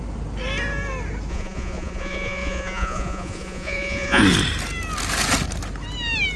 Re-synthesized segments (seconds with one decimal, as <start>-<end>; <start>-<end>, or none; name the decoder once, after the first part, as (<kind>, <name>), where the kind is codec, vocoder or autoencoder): 1.3-4.2 (vocoder, Vocos)